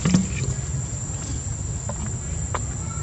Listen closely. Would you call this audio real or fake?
real